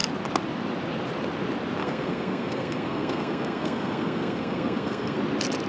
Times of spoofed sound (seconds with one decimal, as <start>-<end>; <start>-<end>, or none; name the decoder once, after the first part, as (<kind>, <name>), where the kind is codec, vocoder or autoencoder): 1.8-5.2 (codec, SNAC)